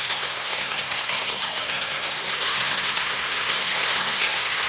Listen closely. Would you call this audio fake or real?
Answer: fake